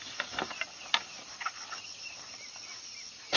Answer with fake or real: real